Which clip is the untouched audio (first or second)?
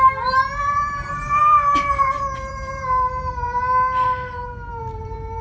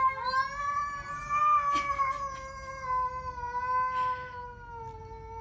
second